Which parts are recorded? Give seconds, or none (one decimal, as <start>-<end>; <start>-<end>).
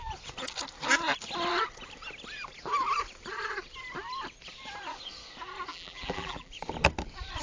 0.0-5.7; 6.5-7.4